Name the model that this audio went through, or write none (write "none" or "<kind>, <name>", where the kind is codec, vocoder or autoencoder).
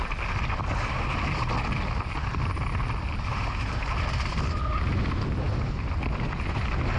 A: none